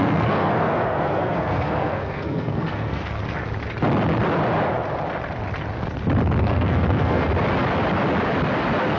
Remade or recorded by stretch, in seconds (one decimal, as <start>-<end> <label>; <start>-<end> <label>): 0.0-3.2 remade; 3.2-6.4 recorded; 6.4-7.3 remade; 7.3-9.0 recorded